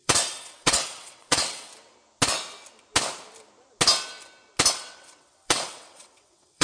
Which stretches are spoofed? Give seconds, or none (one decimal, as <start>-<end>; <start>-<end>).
0.0-1.7; 4.7-6.6